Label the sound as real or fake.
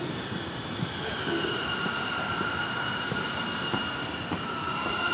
fake